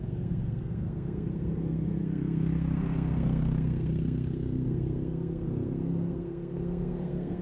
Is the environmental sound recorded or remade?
remade